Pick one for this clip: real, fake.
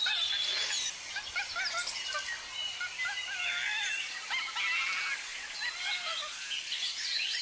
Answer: real